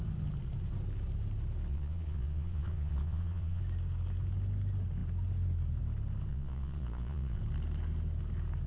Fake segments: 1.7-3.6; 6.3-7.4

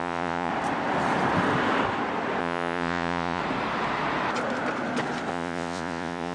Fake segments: 0.0-0.5; 2.4-3.4; 5.3-6.3

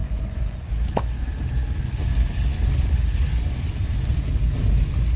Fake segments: 0.0-0.7

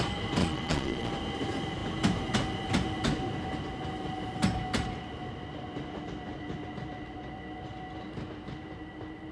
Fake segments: 0.4-1.1

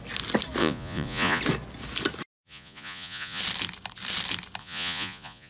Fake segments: 0.6-1.4; 2.4-3.4; 4.6-5.5

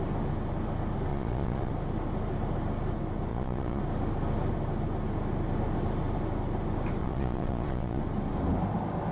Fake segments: 1.1-1.7; 3.3-3.8; 7.0-8.0

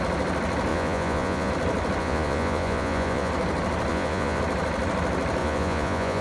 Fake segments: 0.7-1.5; 2.0-3.3; 3.9-4.4; 5.4-6.2

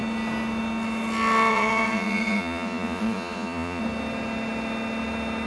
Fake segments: 1.5-3.8